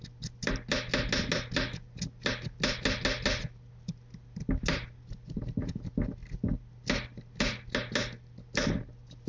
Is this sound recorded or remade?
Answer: recorded